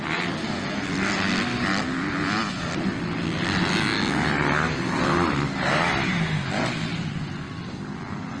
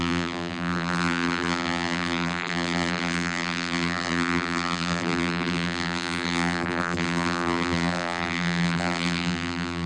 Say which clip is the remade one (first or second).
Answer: second